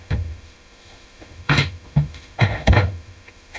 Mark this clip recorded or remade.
remade